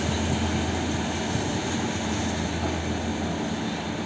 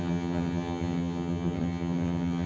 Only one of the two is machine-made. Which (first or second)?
second